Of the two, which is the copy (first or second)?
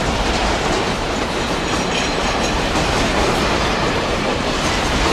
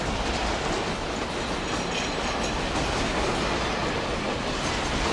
first